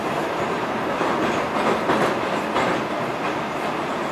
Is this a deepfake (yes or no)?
no